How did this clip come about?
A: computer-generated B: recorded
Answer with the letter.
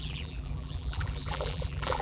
A